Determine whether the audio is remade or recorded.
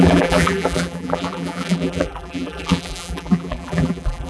remade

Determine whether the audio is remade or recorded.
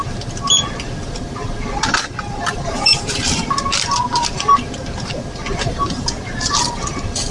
remade